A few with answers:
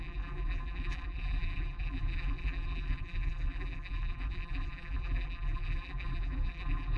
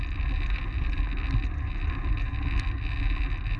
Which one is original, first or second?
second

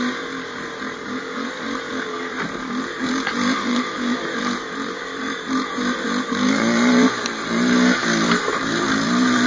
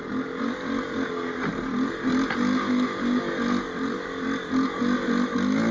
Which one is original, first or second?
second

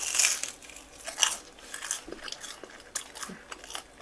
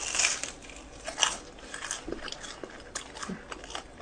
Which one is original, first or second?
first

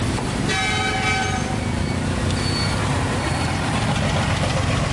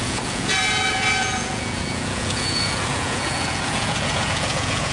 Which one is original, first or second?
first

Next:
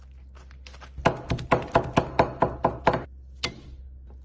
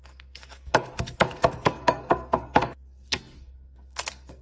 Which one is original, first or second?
first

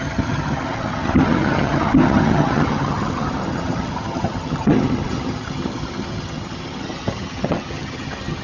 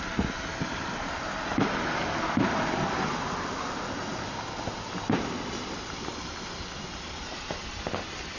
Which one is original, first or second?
second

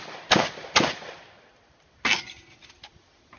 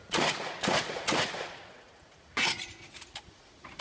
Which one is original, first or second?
first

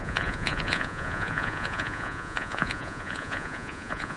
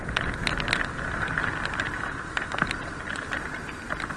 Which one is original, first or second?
second